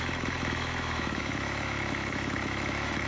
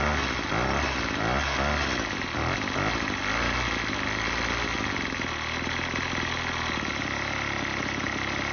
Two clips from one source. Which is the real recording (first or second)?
second